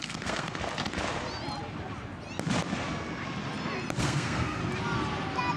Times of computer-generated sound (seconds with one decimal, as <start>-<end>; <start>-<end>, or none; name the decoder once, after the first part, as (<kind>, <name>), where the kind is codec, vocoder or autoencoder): 0.0-0.6 (codec, SNAC); 4.0-4.6